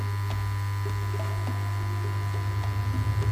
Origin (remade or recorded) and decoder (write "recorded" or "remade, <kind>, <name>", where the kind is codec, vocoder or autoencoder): recorded